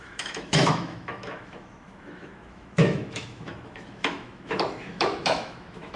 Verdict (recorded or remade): remade